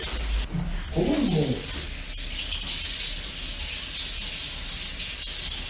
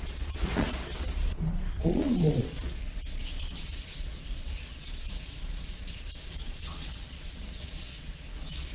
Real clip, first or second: first